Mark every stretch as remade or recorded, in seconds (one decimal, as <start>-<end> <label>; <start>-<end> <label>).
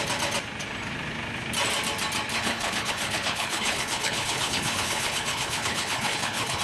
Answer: 0.0-2.3 recorded; 2.3-6.6 remade